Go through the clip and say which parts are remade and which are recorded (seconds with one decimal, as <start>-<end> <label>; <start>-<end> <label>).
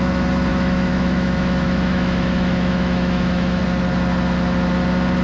0.0-0.5 recorded; 0.5-3.6 remade; 3.6-5.2 recorded